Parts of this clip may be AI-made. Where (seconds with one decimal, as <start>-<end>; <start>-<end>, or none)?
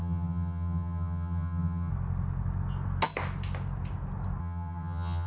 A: 0.0-1.9; 4.4-5.3